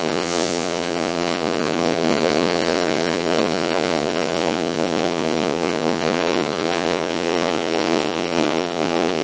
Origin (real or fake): fake